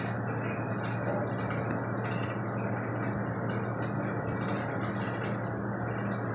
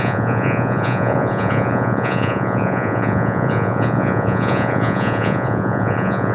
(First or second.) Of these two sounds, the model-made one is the second